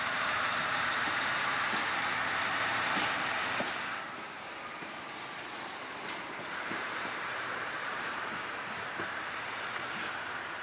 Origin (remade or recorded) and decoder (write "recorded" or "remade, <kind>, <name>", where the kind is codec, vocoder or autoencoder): remade, vocoder, BigVGAN v2